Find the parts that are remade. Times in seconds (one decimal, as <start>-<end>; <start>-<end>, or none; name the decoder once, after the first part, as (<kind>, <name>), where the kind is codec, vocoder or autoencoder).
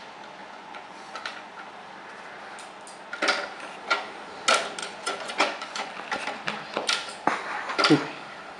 0.4-1.5 (vocoder, Vocos); 4.8-5.9